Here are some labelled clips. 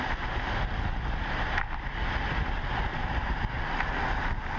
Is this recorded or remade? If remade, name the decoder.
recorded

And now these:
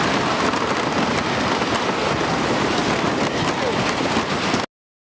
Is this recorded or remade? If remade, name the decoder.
recorded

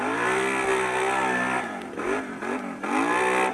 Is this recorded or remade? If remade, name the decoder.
recorded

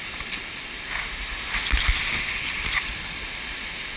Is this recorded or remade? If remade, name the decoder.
recorded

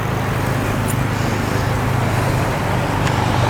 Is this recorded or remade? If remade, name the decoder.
recorded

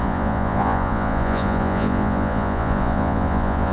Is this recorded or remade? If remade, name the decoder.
remade, vocoder, Vocos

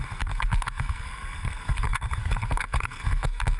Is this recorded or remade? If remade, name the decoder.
remade, codec, SNAC